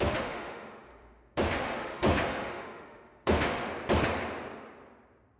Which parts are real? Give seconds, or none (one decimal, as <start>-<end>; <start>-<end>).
3.7-5.4